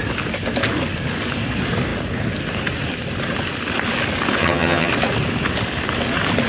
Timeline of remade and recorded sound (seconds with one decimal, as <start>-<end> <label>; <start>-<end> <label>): 0.0-4.4 recorded; 4.4-4.9 remade; 4.9-6.5 recorded